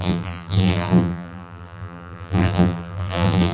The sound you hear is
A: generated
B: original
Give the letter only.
A